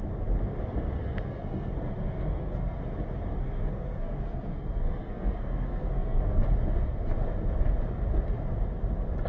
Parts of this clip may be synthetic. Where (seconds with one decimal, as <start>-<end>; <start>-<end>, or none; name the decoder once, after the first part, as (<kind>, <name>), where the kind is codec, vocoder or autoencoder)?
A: 1.0-2.8 (codec, SNAC); 3.3-6.5